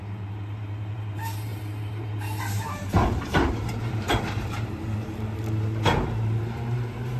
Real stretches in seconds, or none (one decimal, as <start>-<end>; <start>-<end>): none